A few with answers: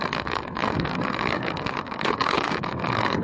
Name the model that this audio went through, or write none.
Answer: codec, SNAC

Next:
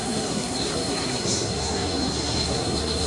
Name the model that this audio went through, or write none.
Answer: codec, SNAC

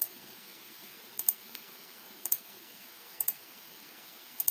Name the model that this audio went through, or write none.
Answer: codec, SNAC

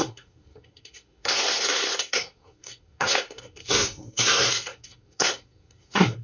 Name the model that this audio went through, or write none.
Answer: codec, SNAC